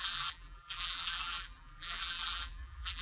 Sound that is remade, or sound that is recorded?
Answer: remade